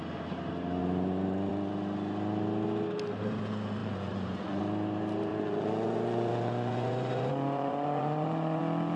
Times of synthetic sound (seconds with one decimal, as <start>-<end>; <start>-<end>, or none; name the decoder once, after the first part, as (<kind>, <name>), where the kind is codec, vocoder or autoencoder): 3.8-4.6 (vocoder, Vocos); 5.3-8.6